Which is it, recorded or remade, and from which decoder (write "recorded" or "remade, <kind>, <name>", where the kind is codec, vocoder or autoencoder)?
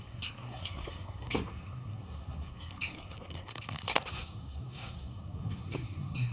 remade, codec, SNAC